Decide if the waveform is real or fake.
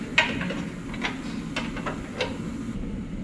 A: real